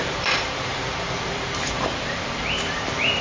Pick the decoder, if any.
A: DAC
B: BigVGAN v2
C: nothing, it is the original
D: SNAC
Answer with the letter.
B